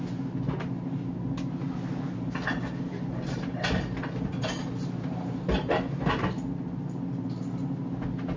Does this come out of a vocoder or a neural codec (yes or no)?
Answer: no